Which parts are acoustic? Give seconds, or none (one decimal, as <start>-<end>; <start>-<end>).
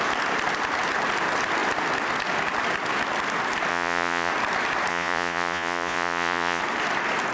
0.0-3.7; 4.3-4.9; 6.6-7.3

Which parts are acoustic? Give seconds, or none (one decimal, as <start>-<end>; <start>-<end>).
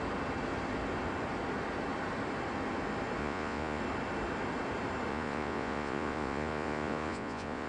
0.0-3.2; 3.8-5.1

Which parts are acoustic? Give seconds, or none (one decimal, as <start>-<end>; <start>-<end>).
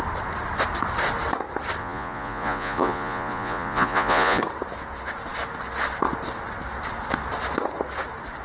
0.0-1.8; 4.4-8.4